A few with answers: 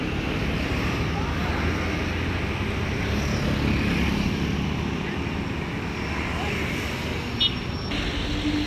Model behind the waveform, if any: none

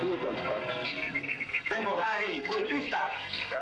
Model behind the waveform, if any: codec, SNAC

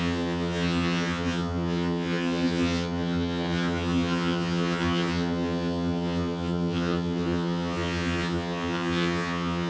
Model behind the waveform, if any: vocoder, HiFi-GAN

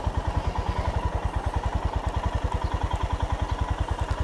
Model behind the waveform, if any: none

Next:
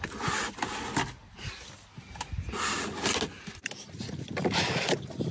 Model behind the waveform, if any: none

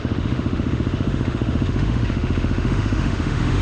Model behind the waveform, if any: autoencoder, DAC-VAE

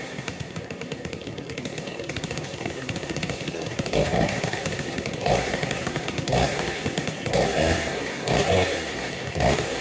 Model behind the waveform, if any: codec, SNAC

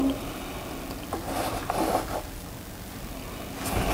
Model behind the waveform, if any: none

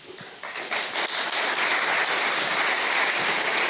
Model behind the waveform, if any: none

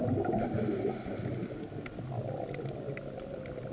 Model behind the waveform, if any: none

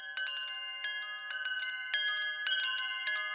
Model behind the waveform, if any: none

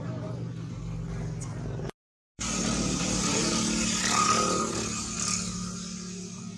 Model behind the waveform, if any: none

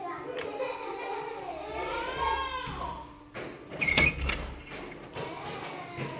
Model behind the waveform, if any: none